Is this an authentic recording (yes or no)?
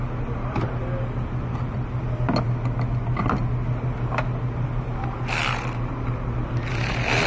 yes